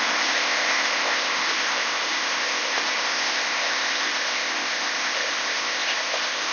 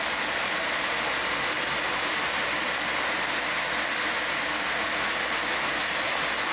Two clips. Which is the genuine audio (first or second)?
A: second